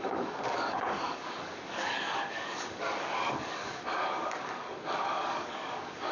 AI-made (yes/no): yes